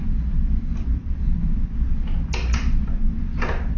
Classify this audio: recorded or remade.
recorded